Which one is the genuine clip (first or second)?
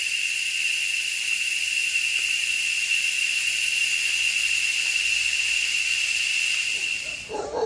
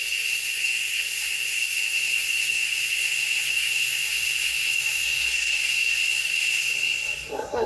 first